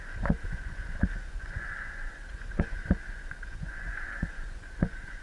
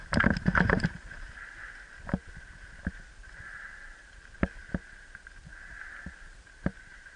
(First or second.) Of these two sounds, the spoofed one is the first